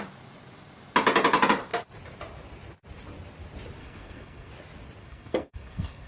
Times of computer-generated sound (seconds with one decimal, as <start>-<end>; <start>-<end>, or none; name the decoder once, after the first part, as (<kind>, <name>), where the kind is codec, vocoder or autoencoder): 3.8-4.5 (codec, SNAC); 5.0-6.1